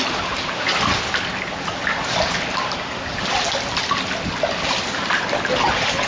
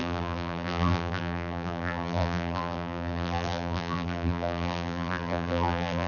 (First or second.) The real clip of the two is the first